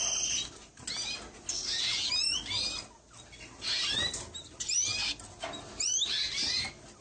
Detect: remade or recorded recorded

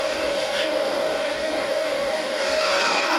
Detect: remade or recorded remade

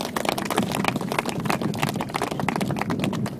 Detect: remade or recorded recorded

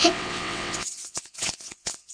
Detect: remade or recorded remade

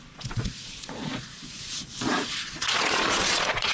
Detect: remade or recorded remade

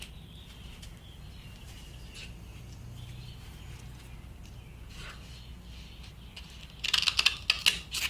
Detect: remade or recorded recorded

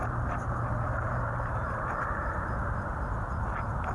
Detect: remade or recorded remade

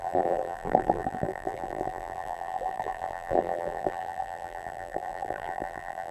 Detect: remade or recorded remade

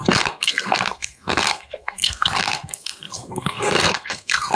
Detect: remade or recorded remade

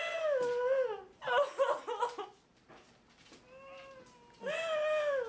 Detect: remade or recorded recorded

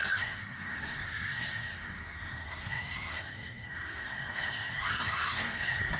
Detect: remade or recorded remade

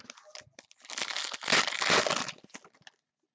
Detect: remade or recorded recorded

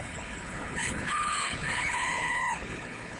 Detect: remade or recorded remade